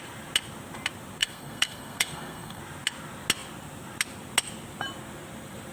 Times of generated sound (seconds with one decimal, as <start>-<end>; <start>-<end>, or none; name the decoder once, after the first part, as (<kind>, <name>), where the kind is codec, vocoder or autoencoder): 1.2-2.6 (codec, SNAC)